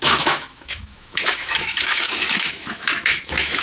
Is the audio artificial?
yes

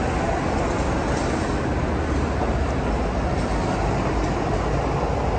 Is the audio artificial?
no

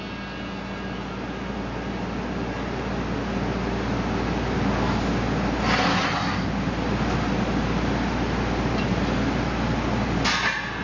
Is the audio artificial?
no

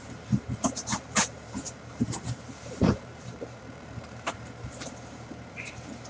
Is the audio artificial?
yes